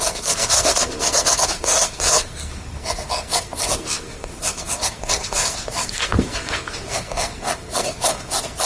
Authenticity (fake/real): fake